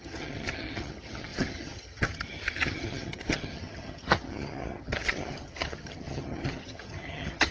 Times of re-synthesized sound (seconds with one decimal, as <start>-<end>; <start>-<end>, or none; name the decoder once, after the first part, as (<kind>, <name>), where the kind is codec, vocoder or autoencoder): 0.0-7.5 (vocoder, HiFi-GAN)